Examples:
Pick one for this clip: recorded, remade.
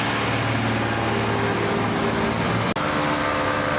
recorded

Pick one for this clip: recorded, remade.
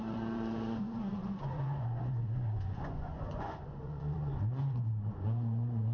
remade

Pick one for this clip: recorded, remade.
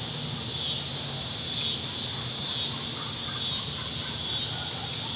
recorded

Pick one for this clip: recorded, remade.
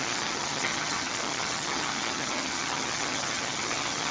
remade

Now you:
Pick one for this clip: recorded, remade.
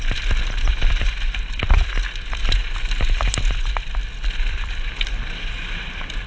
recorded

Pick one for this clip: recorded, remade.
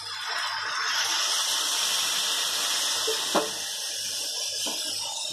recorded